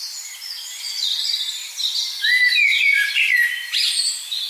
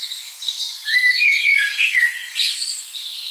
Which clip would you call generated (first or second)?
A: second